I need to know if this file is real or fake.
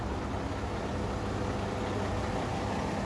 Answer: real